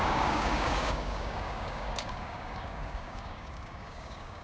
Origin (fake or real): fake